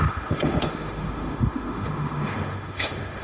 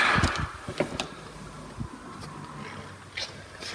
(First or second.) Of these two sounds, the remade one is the first